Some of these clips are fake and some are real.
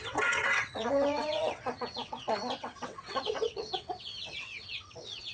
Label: fake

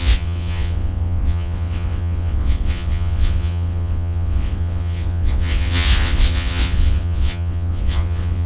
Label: fake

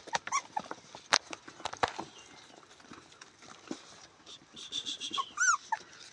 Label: real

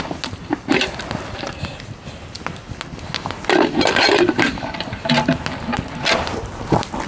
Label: real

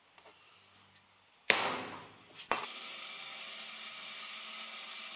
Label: real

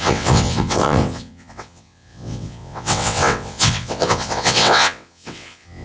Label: fake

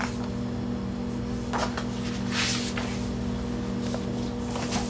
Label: real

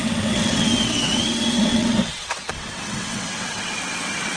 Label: fake